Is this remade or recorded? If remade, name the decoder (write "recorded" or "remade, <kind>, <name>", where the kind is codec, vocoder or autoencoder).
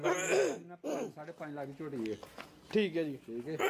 recorded